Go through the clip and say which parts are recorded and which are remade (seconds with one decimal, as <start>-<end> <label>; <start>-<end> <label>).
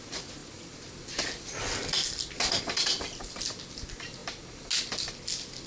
0.0-5.7 recorded